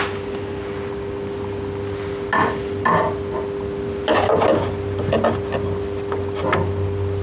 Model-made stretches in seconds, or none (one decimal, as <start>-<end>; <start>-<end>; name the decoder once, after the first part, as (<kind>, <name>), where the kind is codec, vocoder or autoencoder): none